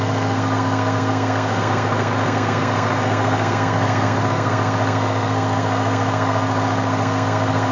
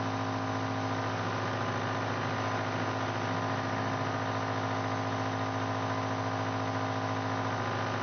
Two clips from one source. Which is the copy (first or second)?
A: first